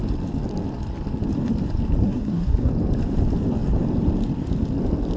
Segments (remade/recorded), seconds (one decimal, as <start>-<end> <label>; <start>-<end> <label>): 0.0-2.0 recorded; 2.0-2.7 remade; 2.7-5.2 recorded